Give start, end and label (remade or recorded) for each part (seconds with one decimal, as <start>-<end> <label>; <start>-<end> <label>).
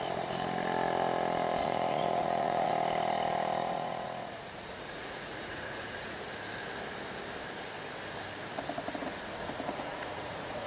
0.0-1.6 recorded; 1.6-2.7 remade; 2.7-3.6 recorded; 3.6-6.3 remade; 6.3-9.0 recorded; 9.0-10.7 remade